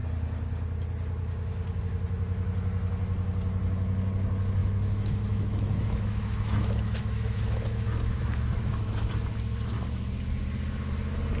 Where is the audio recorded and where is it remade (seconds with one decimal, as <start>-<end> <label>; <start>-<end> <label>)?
0.0-4.6 recorded; 4.6-9.1 remade; 9.1-11.4 recorded